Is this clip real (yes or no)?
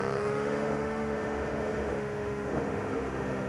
no